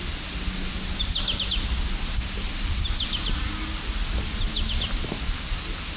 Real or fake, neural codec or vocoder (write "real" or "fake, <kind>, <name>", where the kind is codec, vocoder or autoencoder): real